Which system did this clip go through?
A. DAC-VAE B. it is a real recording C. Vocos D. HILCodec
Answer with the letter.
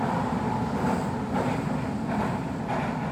B